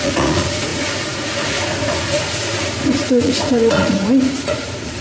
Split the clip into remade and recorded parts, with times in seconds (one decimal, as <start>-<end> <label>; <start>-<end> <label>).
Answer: 0.0-5.0 remade